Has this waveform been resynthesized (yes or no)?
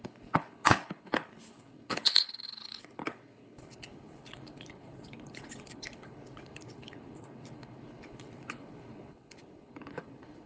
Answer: yes